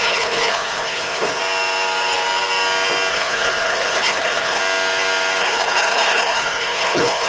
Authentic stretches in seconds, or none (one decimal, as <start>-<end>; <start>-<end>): 1.4-3.1; 4.6-5.4

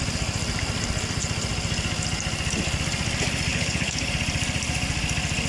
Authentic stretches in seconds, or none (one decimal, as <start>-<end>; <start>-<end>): 0.0-3.5; 4.1-5.5

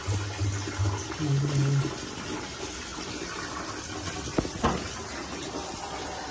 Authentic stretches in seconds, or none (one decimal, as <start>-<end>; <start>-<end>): 0.0-6.3

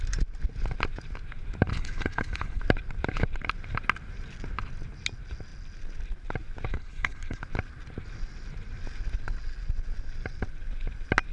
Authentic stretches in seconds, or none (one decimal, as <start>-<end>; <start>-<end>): 0.0-1.7; 2.6-6.7; 7.4-11.3